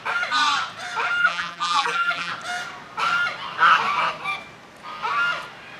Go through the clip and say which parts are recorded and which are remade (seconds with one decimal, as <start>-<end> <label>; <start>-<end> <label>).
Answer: 0.0-1.2 recorded; 1.2-2.3 remade; 2.3-5.8 recorded